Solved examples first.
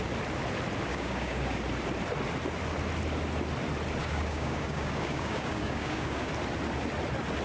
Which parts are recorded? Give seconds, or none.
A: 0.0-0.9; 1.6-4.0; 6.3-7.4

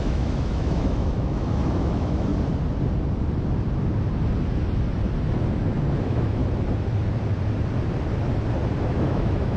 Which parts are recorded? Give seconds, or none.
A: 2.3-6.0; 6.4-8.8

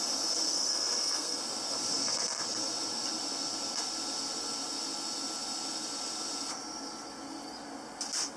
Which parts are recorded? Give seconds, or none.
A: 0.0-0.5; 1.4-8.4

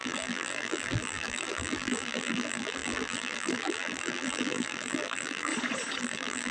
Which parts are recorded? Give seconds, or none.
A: 5.5-6.0

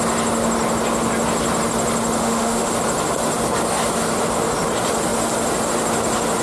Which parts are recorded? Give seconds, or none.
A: 0.0-2.2; 2.7-6.4